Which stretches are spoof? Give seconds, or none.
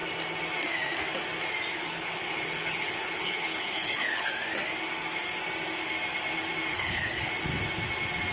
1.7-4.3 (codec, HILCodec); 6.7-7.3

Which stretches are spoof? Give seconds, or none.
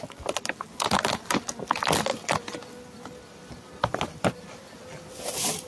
none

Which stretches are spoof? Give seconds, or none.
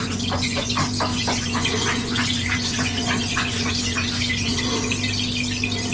0.0-0.7 (vocoder, Vocos); 1.1-4.6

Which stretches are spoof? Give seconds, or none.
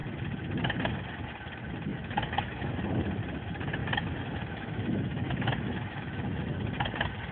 1.9-2.7 (autoencoder, DAC-VAE); 3.8-6.4